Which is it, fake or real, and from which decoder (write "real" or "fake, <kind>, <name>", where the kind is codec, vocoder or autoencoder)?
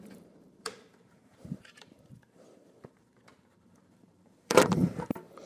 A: fake, vocoder, BigVGAN v2